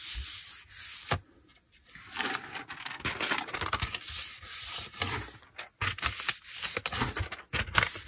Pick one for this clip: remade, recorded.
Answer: recorded